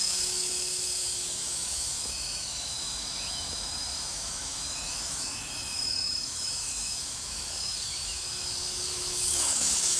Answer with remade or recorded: remade